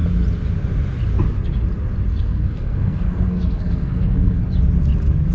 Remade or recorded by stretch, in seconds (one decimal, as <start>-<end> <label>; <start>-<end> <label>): 0.0-2.1 recorded; 2.1-4.4 remade; 4.4-5.3 recorded